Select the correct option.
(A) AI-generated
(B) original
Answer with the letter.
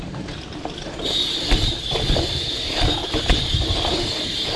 A